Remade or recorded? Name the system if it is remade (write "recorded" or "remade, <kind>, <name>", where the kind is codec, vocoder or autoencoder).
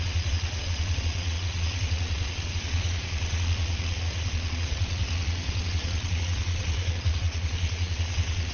remade, vocoder, Vocos